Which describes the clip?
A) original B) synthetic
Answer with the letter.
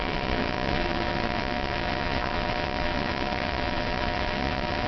B